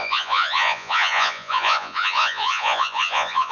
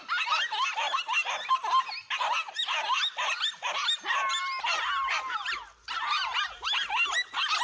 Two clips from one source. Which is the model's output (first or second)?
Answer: first